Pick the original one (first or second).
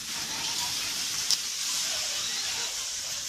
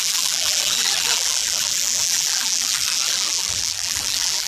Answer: first